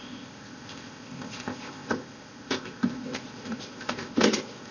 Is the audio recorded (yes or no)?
no